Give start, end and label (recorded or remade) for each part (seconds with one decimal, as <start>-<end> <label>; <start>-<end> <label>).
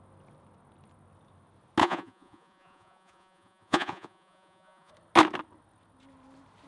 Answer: 0.0-1.8 recorded; 1.8-4.9 remade; 4.9-6.7 recorded